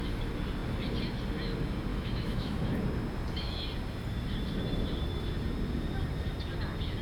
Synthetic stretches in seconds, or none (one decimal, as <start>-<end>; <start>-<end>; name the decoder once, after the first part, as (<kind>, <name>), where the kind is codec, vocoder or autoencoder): 1.9-2.8 (autoencoder, DAC-VAE)